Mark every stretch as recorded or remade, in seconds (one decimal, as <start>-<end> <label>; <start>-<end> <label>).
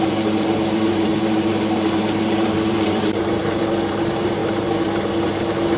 0.0-5.8 remade